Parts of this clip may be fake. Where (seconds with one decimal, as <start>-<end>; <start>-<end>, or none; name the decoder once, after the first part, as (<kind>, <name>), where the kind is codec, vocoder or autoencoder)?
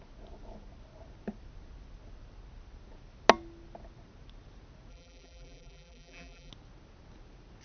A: 4.9-6.5 (vocoder, BigVGAN v2)